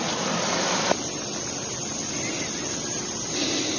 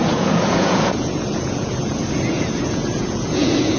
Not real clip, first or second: second